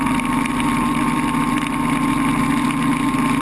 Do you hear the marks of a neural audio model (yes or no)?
no